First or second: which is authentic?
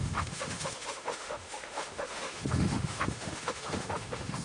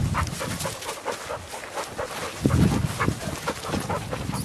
second